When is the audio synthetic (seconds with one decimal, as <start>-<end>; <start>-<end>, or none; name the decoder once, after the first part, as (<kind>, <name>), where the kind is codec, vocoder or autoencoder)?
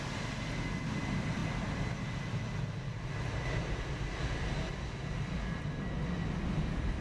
none